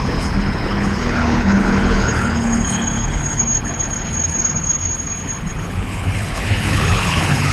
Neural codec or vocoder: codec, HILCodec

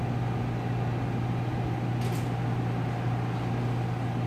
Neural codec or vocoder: none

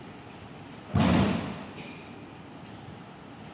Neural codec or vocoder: none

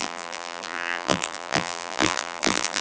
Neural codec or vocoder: vocoder, BigVGAN v2